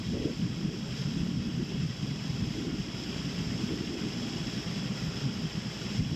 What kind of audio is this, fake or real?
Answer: real